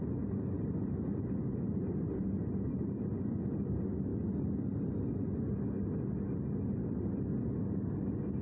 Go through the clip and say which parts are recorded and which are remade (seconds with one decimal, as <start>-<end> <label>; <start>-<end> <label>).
0.0-1.5 recorded; 1.5-2.3 remade; 2.3-8.4 recorded